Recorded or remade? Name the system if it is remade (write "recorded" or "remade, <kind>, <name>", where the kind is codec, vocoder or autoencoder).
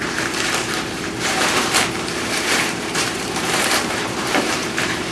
remade, vocoder, BigVGAN v2